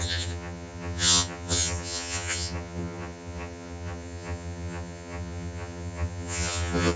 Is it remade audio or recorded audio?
remade